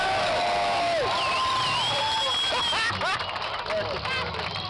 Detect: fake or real real